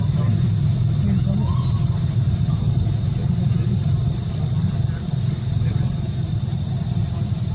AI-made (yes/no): no